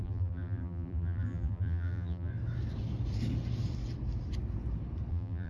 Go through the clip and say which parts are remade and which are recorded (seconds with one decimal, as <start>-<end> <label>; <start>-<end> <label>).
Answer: 0.0-2.3 remade; 2.3-5.1 recorded; 5.1-5.5 remade